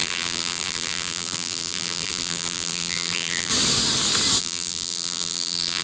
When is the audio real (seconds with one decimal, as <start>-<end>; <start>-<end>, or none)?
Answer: 3.5-4.4

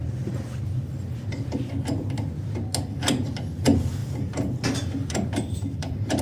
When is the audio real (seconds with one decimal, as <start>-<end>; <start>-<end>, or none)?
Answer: 0.0-4.0